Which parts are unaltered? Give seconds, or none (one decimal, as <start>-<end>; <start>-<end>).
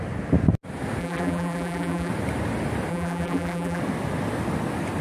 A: 0.0-1.0; 2.1-2.9; 3.8-5.0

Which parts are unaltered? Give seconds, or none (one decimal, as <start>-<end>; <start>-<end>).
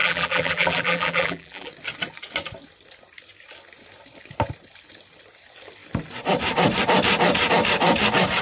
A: 1.7-8.4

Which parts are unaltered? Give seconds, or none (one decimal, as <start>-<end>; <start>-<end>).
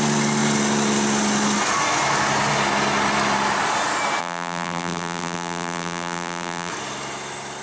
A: 0.0-4.2; 6.7-7.6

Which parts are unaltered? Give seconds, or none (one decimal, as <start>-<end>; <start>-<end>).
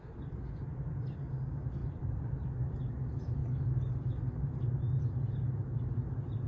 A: 0.0-1.8; 2.3-6.5